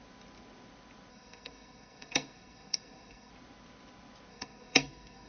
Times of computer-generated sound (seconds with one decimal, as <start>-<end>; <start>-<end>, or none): 1.1-3.3; 4.3-5.3